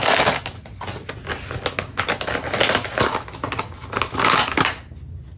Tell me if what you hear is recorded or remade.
recorded